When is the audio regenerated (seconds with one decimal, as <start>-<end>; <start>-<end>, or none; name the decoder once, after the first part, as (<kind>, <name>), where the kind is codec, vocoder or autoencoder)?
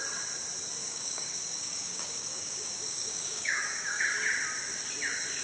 0.8-4.0 (codec, DAC)